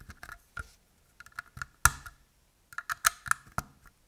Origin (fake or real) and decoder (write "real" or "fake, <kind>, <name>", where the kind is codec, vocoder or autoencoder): real